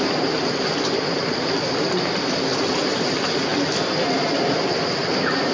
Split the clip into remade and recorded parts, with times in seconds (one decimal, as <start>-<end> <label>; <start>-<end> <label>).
0.0-5.5 recorded